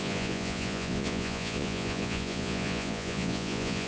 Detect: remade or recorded remade